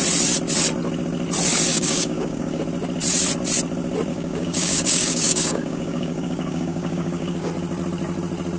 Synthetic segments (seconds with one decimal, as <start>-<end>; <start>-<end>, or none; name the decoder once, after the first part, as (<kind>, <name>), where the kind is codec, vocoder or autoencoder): 1.7-2.6 (codec, DAC); 4.1-7.5